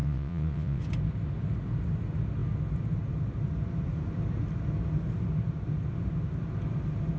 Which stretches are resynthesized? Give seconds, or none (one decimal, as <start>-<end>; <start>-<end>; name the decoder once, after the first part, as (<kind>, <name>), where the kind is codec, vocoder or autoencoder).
0.0-0.8 (vocoder, WaveNeXt)